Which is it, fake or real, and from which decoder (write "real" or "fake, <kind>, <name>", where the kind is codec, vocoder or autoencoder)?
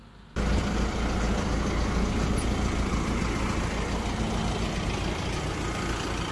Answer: real